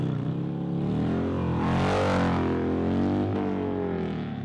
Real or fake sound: real